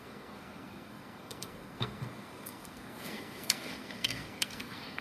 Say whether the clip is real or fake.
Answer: fake